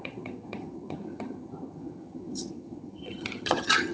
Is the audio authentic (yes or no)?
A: no